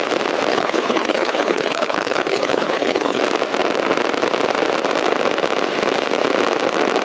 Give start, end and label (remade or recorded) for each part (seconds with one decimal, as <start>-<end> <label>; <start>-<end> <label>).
0.0-0.5 recorded; 0.5-3.2 remade; 3.2-7.0 recorded